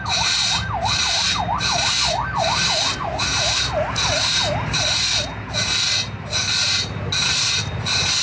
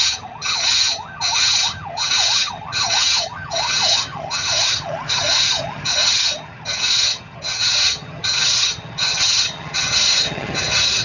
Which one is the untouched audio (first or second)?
first